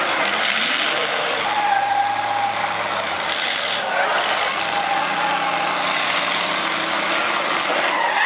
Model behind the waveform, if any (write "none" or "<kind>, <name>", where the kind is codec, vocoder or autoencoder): none